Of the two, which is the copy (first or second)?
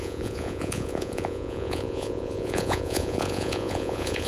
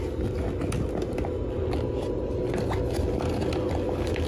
first